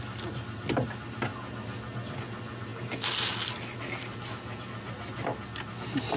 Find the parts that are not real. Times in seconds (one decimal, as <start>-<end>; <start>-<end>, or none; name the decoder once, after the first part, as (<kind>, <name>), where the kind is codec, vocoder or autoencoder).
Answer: 2.7-3.5 (vocoder, BigVGAN v2)